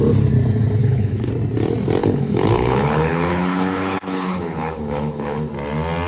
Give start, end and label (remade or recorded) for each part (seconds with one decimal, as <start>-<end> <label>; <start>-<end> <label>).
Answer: 0.0-0.8 recorded; 0.8-1.3 remade; 1.3-2.0 recorded; 2.0-5.5 remade; 5.5-6.1 recorded